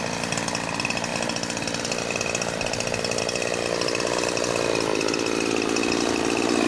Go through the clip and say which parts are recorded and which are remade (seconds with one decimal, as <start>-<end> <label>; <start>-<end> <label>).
0.0-6.7 recorded